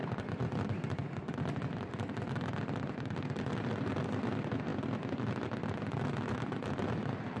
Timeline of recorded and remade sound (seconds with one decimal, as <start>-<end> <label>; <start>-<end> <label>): 0.0-7.4 recorded